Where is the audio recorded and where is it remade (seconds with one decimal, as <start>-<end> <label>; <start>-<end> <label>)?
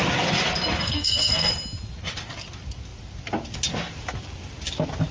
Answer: 0.0-0.8 recorded; 0.8-1.5 remade; 1.5-5.1 recorded